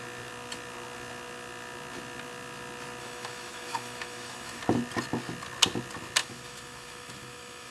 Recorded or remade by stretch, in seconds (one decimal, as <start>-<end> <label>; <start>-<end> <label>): 0.0-3.0 recorded; 3.0-4.6 remade; 4.6-6.2 recorded; 6.2-7.7 remade